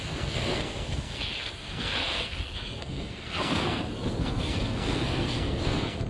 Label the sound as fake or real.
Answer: fake